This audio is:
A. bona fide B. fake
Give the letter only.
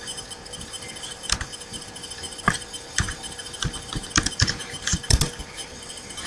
B